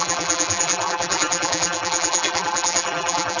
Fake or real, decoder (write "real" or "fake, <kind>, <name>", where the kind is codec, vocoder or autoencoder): fake, vocoder, BigVGAN v2